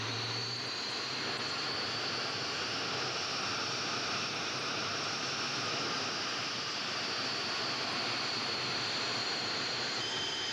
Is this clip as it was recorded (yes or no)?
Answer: yes